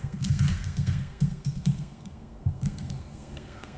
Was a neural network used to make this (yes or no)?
yes